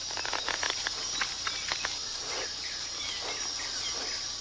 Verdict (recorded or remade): remade